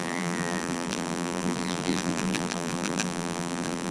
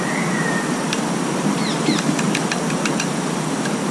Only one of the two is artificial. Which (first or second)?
first